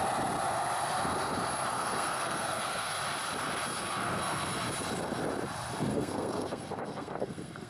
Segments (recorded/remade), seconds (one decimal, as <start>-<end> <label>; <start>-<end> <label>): 0.0-1.7 recorded; 1.7-2.9 remade; 2.9-3.8 recorded; 3.8-4.5 remade; 4.5-5.9 recorded; 5.9-7.7 remade